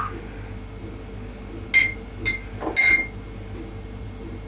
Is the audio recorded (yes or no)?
yes